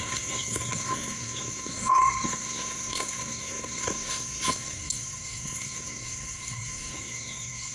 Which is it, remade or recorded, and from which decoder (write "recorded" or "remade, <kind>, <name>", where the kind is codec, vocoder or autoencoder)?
remade, codec, SNAC